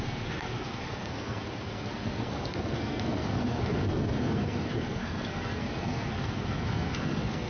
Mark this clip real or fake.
fake